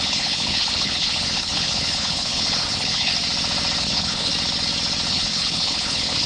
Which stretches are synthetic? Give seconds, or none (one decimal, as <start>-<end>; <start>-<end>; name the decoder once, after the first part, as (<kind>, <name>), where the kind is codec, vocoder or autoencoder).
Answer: 0.0-3.1 (codec, HILCodec); 3.8-4.3; 5.1-6.3